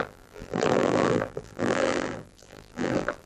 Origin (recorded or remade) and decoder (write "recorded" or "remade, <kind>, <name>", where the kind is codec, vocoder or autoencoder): remade, vocoder, BigVGAN v2